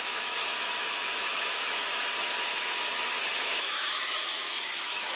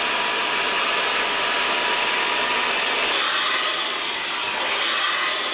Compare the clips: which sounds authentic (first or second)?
second